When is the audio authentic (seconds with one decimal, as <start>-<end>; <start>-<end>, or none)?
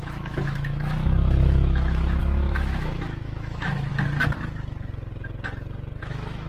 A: 3.9-6.0